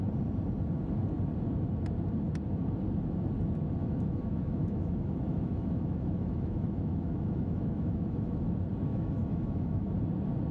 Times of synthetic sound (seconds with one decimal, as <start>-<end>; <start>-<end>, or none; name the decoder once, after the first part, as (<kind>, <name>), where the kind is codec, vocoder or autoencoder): 3.8-8.3 (autoencoder, DAC-VAE); 8.9-9.9